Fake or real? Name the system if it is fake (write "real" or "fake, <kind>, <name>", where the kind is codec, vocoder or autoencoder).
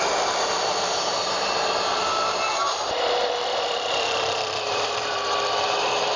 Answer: fake, vocoder, BigVGAN v2